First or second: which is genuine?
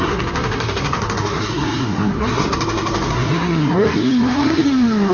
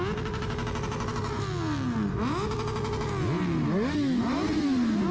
second